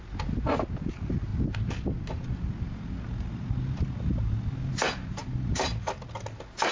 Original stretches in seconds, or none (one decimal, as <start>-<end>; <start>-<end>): 0.0-6.7